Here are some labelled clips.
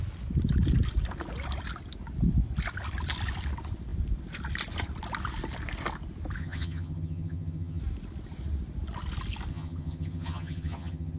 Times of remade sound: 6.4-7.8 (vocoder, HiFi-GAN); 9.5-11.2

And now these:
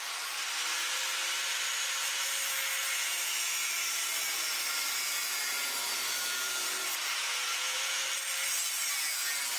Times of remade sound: 2.8-3.3 (vocoder, Vocos); 7.2-8.0

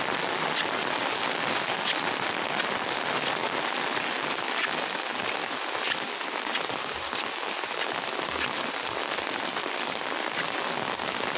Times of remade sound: none

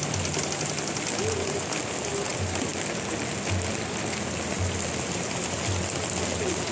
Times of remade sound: none

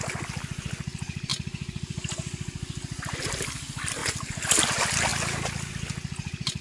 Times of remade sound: none

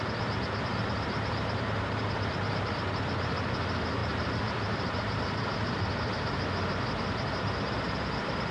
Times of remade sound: 0.7-3.0 (vocoder, BigVGAN v2); 4.0-5.2

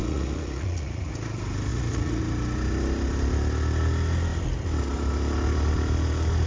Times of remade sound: 0.0-1.0 (vocoder, Vocos); 1.7-2.2